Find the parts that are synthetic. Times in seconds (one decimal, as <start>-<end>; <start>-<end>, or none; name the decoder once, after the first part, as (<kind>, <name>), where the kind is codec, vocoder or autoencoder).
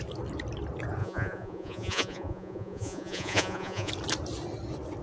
1.0-3.9 (vocoder, Vocos)